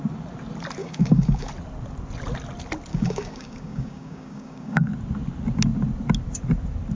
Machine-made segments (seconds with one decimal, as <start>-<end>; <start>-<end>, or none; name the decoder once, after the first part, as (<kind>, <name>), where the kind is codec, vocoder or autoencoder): 0.8-1.5 (codec, DAC); 2.9-4.9